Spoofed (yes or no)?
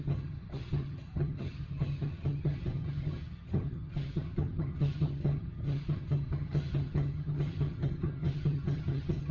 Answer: yes